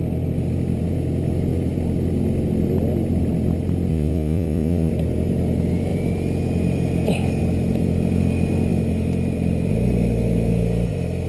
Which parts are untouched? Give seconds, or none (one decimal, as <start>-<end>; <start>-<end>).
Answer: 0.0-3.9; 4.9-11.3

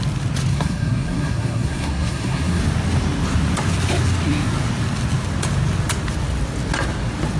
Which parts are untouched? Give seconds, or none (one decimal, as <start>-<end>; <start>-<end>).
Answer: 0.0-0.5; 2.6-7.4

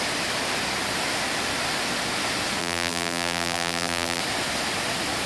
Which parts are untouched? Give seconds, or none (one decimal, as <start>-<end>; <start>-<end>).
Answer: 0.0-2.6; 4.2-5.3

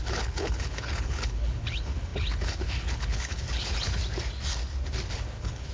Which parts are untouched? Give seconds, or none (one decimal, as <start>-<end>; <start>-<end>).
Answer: 4.0-5.1

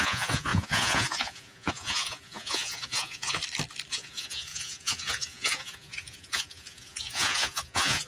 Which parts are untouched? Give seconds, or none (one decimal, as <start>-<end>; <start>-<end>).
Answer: 3.4-3.9

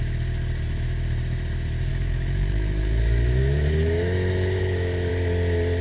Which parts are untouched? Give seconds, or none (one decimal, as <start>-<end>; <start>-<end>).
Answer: 0.0-1.9; 5.1-5.8

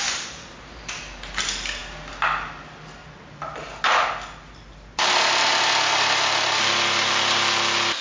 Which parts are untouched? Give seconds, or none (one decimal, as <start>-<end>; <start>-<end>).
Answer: 0.0-8.0